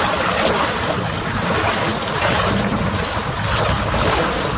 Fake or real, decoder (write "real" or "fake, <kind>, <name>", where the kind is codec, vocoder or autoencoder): real